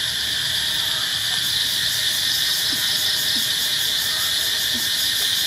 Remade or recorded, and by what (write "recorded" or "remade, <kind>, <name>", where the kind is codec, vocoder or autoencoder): recorded